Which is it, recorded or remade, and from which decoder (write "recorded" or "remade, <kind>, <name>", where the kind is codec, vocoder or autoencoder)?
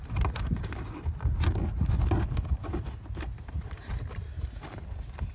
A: recorded